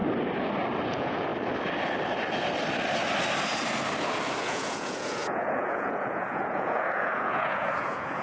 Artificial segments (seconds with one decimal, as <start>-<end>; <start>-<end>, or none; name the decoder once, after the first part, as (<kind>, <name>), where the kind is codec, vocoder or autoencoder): 0.9-1.3 (vocoder, Vocos); 4.4-8.2